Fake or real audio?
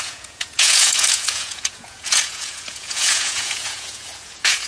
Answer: fake